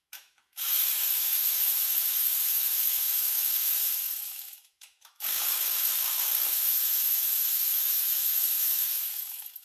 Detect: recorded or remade remade